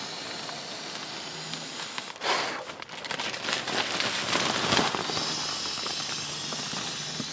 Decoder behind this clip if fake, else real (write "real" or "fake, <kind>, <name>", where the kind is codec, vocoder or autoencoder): real